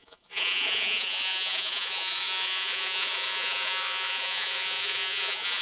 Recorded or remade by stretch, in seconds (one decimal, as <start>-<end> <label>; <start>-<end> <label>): 0.0-5.6 remade